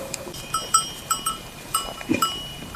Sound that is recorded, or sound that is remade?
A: remade